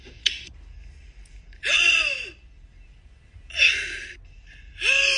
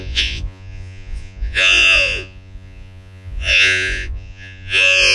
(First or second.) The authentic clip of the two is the first